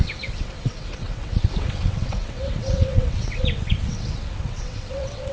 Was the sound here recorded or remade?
remade